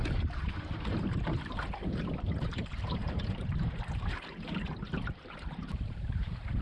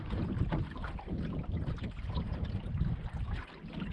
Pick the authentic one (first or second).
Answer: second